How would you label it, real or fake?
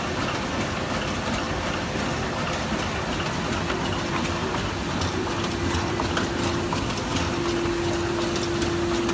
real